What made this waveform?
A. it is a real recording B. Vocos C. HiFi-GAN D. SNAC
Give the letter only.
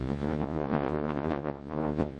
B